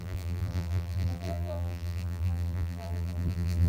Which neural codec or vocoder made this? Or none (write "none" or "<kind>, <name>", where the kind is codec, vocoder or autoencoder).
vocoder, BigVGAN v2